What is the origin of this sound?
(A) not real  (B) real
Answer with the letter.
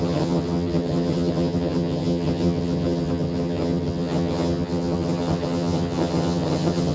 A